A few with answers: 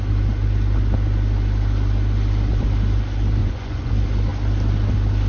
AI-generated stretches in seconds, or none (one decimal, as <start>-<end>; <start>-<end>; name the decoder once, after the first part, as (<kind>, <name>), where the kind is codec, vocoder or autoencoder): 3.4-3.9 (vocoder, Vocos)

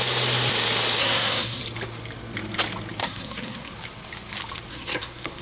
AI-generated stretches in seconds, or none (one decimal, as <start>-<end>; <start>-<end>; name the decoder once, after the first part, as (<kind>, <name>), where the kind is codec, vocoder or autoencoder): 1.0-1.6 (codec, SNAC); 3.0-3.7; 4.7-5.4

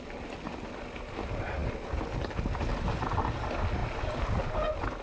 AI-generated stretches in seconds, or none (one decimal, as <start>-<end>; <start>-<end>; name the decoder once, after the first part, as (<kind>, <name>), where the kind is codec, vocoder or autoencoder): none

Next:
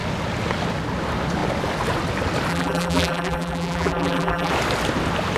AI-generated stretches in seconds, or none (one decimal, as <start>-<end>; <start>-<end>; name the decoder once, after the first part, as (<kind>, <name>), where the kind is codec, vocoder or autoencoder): 2.5-4.5 (vocoder, BigVGAN v2)

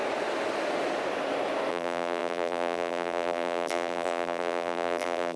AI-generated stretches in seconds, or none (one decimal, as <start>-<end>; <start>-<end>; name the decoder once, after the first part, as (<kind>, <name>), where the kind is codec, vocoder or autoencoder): 1.7-5.4 (vocoder, BigVGAN v2)